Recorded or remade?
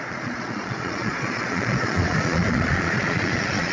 remade